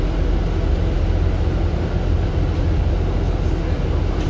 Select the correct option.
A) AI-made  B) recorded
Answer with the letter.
B